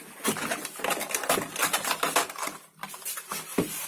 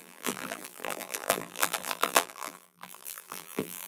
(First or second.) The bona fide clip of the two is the first